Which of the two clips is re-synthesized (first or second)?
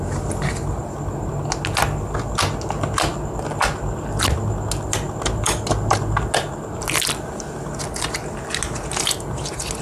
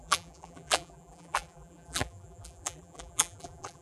second